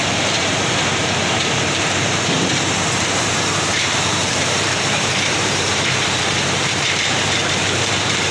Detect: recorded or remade remade